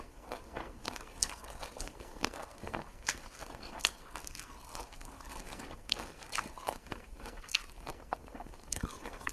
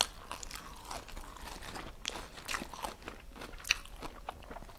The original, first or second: second